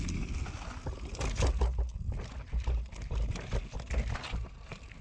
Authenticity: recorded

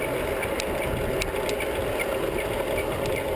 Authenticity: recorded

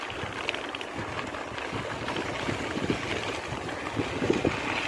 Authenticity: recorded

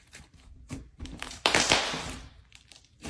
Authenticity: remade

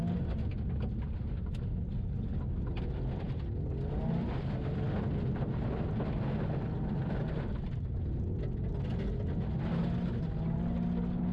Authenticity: recorded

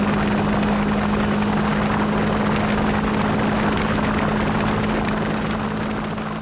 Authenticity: recorded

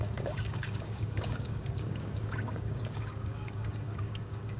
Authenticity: remade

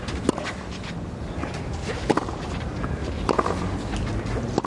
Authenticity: remade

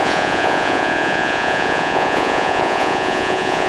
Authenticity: remade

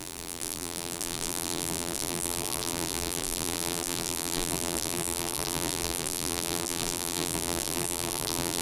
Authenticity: remade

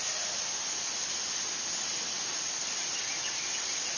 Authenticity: recorded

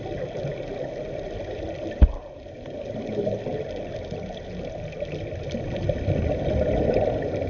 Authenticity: recorded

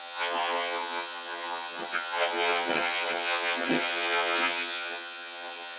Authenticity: remade